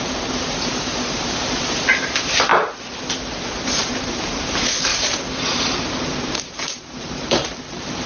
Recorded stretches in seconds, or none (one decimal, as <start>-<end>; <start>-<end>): 2.5-4.1